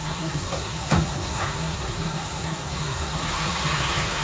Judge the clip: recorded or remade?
remade